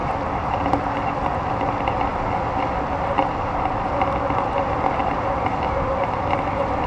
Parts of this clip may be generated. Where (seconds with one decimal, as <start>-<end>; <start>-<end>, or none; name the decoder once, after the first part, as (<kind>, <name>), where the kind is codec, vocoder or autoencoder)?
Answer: none